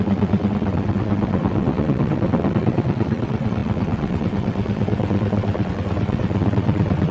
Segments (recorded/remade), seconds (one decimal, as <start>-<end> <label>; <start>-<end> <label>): 0.0-7.1 remade